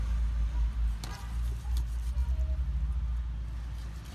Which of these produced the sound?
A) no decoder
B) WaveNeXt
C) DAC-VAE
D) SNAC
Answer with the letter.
A